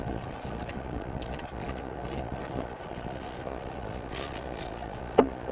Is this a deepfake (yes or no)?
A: yes